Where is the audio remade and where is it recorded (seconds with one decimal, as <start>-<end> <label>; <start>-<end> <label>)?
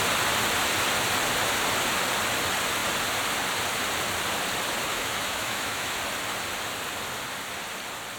0.0-4.9 recorded; 4.9-6.0 remade; 6.0-8.2 recorded